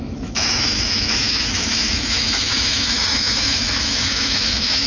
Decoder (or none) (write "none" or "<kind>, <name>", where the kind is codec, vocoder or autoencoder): autoencoder, DAC-VAE